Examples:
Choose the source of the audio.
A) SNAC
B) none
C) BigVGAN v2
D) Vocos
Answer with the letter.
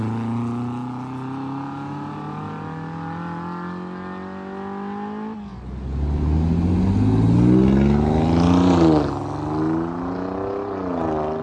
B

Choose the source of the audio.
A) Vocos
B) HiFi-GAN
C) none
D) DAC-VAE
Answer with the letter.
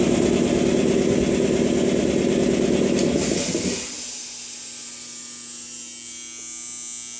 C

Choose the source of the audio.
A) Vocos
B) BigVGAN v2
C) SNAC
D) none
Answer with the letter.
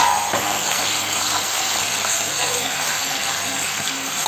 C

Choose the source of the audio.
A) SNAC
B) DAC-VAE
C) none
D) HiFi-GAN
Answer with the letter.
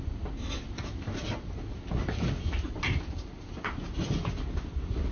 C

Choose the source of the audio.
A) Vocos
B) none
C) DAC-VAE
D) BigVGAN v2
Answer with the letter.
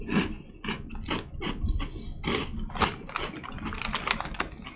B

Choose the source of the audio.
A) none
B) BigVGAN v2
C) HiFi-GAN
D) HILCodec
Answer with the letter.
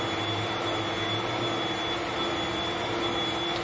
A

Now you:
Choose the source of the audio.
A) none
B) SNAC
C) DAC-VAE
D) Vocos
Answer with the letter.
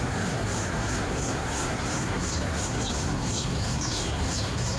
B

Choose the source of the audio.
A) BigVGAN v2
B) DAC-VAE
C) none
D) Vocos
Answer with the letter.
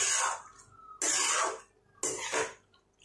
C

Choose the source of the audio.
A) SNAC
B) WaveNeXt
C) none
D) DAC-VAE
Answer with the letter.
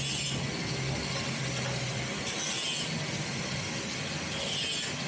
C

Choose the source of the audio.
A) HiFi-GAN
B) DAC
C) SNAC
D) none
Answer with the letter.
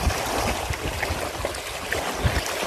D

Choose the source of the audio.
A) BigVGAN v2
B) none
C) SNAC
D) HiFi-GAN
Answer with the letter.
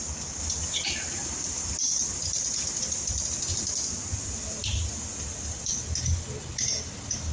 B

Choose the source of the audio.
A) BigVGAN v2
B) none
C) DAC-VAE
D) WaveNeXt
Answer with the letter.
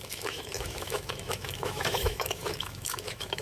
C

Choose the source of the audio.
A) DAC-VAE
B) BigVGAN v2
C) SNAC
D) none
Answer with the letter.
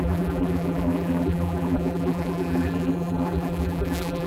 B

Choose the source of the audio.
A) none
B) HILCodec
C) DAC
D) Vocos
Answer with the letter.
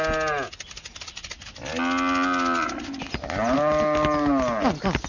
A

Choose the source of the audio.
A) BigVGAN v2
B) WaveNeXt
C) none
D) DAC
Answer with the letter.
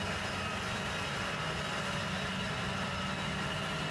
C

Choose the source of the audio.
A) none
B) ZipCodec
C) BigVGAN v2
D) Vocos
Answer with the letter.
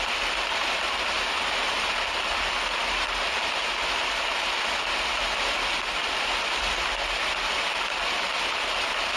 A